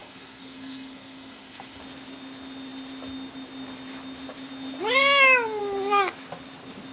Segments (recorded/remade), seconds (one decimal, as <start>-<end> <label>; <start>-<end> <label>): 0.0-1.8 remade; 1.8-6.9 recorded